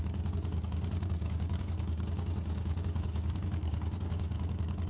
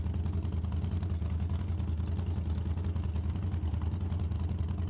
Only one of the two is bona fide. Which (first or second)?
second